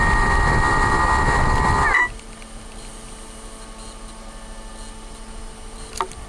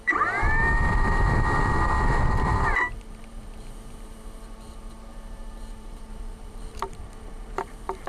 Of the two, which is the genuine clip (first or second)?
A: first